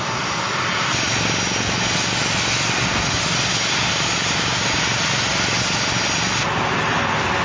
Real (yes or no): yes